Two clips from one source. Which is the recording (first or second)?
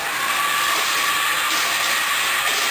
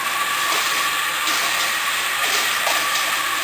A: first